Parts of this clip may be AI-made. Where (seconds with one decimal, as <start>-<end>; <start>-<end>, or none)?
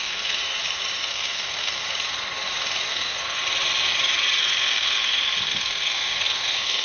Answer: 0.0-0.4; 1.1-1.8; 2.9-3.4; 4.4-6.8